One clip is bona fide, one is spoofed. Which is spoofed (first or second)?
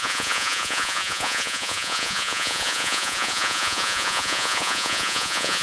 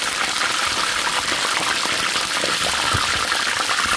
first